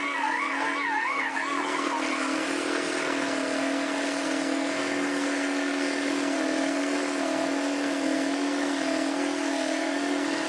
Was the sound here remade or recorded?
remade